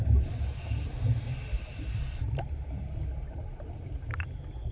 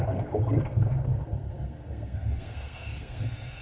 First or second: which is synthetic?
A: second